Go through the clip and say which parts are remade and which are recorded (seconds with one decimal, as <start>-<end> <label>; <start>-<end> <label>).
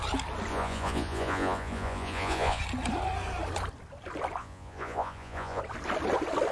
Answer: 0.0-0.5 recorded; 0.5-2.6 remade; 2.6-4.4 recorded; 4.4-5.6 remade; 5.6-6.5 recorded